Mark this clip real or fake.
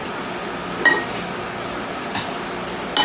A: real